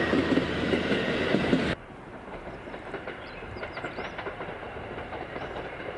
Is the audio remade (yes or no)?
yes